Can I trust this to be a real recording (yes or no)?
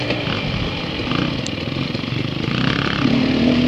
yes